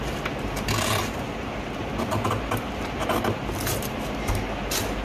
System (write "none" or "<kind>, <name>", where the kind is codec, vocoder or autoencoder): none